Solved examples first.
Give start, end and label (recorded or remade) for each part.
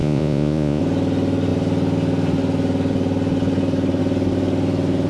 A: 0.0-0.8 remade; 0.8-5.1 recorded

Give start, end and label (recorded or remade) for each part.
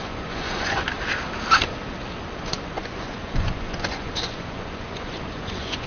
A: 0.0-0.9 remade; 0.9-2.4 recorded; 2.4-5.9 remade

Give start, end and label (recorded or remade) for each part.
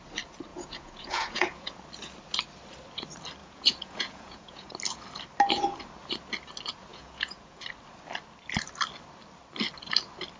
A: 0.0-0.5 recorded; 0.5-1.7 remade; 1.7-3.4 recorded; 3.4-4.7 remade; 4.7-6.9 recorded; 6.9-7.6 remade; 7.6-10.4 recorded